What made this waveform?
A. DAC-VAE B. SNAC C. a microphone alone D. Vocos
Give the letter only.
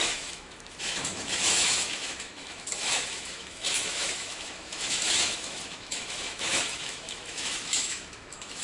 A